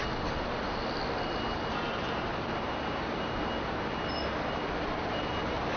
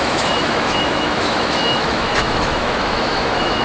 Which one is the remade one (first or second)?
second